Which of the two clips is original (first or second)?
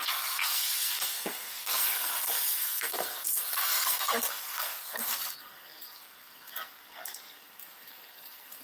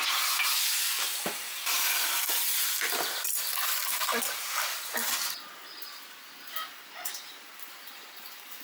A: second